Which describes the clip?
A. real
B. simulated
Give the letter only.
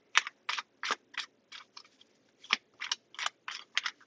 A